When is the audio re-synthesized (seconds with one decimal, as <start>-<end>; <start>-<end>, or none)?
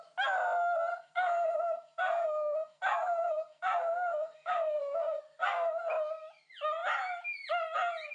0.9-5.8